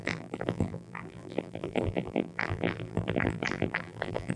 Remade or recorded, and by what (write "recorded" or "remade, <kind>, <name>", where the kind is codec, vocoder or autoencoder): remade, vocoder, BigVGAN v2